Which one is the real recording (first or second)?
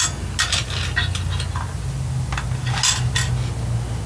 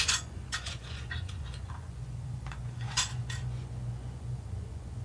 first